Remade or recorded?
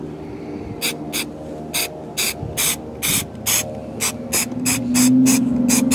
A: recorded